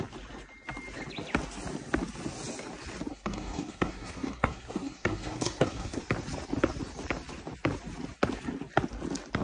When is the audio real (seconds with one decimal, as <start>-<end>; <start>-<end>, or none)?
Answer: 0.0-3.1; 6.0-9.4